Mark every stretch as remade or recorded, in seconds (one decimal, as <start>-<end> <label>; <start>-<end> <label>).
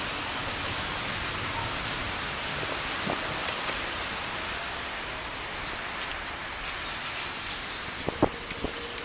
0.0-0.4 recorded; 0.4-5.3 remade; 5.3-9.0 recorded